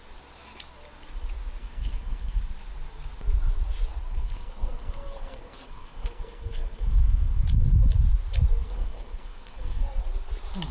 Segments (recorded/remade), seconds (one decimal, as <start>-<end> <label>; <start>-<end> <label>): 0.0-1.6 recorded; 1.6-2.4 remade; 2.4-4.1 recorded; 4.1-7.4 remade; 7.4-8.6 recorded; 8.6-10.0 remade; 10.0-10.7 recorded